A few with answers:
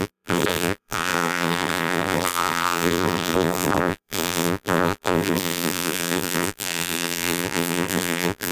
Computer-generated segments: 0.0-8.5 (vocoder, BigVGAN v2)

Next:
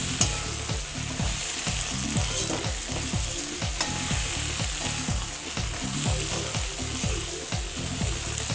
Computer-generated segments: none

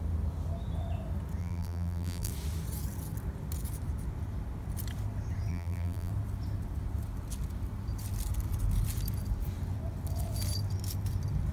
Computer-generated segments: 1.4-2.3 (vocoder, BigVGAN v2); 5.5-6.1

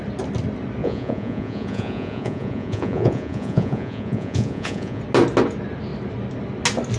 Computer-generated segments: 0.8-5.0 (vocoder, Vocos)

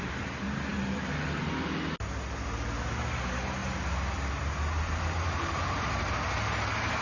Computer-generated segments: none

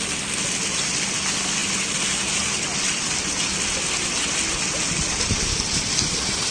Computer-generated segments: none

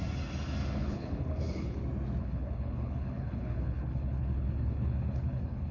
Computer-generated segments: 0.8-1.8 (codec, HILCodec); 2.2-5.7